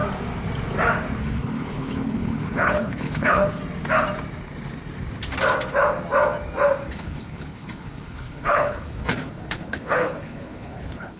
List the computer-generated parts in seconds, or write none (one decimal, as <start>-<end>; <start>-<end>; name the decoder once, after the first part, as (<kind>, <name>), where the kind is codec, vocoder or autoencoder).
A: 1.2-3.6 (codec, HILCodec); 6.9-11.2